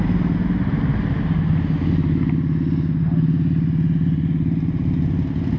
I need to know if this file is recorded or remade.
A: recorded